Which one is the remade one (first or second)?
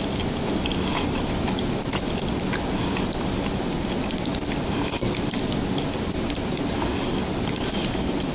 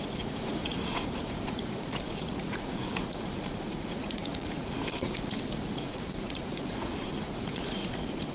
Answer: second